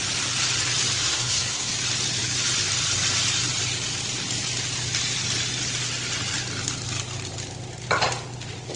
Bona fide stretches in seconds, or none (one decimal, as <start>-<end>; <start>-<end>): 0.0-1.0; 1.7-8.8